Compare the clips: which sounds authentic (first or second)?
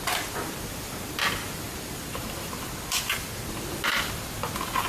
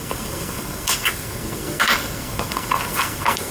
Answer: first